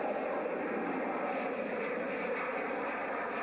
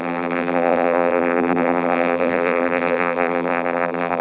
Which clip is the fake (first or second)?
second